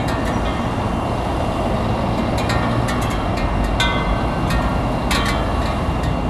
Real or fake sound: real